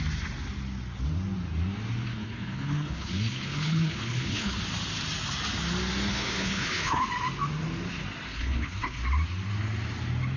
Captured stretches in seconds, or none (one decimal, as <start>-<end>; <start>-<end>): 0.0-2.1; 4.6-6.1; 7.0-8.3; 9.0-10.4